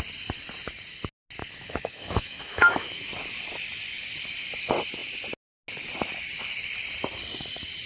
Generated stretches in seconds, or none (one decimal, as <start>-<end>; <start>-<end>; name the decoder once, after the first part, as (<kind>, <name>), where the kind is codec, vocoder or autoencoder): 1.4-3.1 (autoencoder, DAC-VAE)